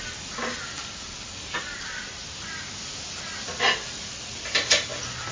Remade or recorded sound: recorded